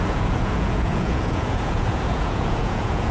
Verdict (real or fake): fake